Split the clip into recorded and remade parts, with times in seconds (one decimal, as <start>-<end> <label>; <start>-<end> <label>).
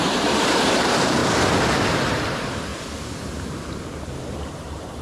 0.0-1.2 remade; 1.2-1.8 recorded; 1.8-2.7 remade; 2.7-4.6 recorded; 4.6-5.0 remade